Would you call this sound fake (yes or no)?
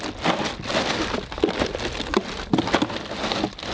no